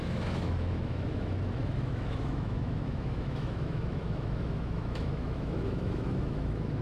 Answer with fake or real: fake